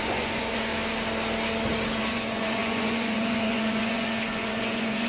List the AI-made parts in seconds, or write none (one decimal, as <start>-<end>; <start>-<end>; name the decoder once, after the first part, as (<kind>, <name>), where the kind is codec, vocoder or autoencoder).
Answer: 0.0-0.7 (vocoder, Vocos); 2.0-5.1

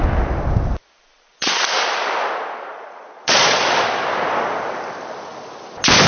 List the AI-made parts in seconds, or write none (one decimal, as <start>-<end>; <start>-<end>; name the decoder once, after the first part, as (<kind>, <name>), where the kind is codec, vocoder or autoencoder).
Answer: 1.0-1.6 (vocoder, Vocos); 2.7-3.6

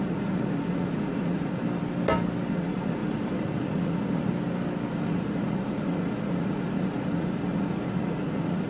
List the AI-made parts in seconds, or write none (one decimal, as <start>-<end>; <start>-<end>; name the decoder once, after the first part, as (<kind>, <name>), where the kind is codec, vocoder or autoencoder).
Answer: 0.0-1.6 (vocoder, Vocos); 2.5-4.3; 4.9-8.7

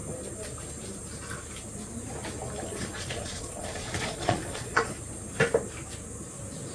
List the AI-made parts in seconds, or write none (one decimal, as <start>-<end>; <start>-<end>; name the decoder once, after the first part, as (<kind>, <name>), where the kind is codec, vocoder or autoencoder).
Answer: 2.7-4.9 (vocoder, Vocos)

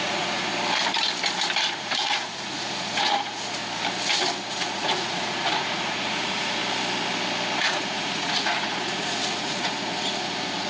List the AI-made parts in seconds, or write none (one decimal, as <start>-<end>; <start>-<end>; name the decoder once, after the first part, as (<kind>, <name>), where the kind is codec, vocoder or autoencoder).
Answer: 0.0-0.5 (vocoder, Vocos); 1.7-3.6; 4.5-6.6; 7.6-10.7